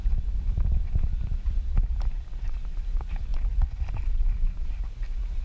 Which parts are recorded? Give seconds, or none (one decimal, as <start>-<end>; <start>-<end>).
0.0-5.4